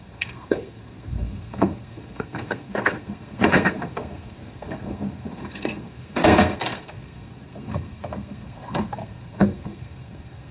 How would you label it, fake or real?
fake